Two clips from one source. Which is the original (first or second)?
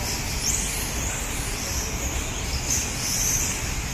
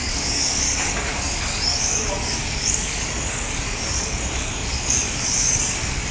first